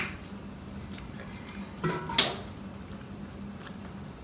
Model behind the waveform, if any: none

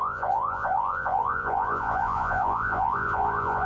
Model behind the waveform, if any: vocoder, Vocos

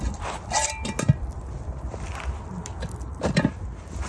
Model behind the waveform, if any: none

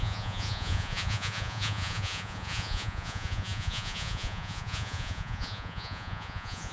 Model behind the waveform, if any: vocoder, Vocos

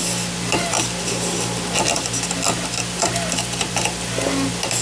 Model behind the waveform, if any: none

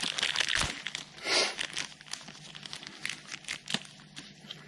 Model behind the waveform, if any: none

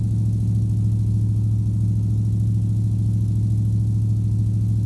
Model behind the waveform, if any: none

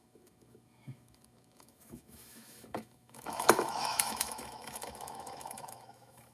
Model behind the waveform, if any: autoencoder, DAC-VAE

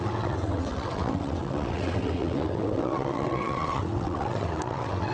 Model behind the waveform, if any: vocoder, WaveNeXt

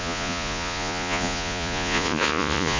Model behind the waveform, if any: vocoder, Vocos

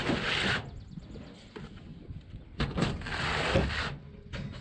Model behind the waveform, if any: none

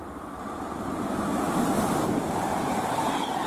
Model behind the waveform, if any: vocoder, BigVGAN v2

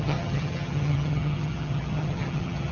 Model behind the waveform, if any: vocoder, HiFi-GAN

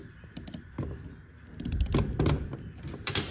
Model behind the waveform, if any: none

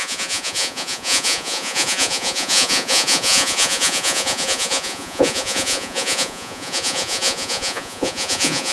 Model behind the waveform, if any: vocoder, Vocos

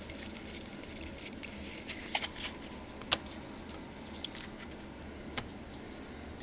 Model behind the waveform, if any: none